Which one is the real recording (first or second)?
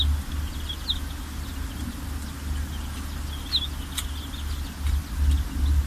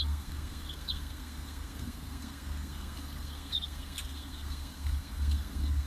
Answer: first